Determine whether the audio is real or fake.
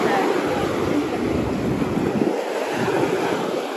real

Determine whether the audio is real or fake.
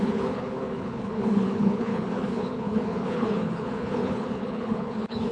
fake